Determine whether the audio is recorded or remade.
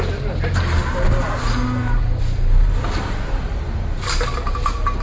recorded